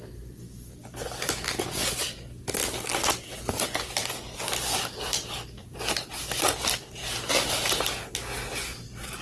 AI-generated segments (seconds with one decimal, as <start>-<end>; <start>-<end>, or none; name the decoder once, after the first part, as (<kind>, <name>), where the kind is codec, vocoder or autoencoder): none